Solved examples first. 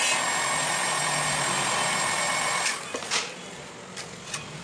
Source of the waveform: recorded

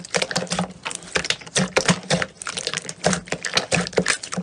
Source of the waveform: recorded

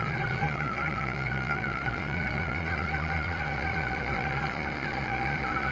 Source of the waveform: remade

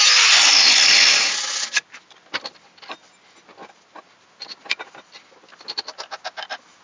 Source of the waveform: recorded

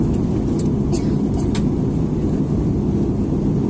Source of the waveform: recorded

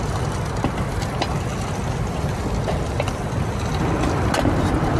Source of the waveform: recorded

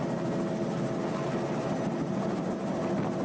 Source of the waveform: recorded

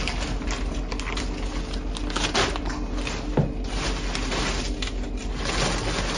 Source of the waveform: recorded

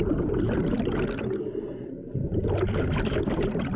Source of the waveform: recorded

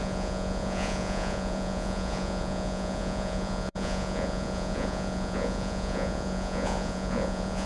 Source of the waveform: remade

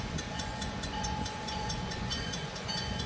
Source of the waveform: remade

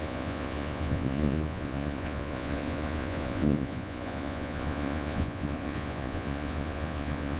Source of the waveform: remade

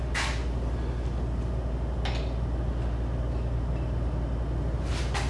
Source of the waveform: recorded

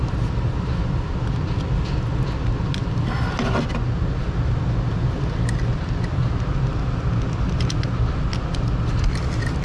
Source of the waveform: recorded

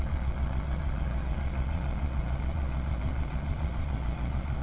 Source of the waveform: remade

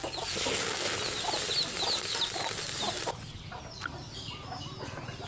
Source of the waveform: recorded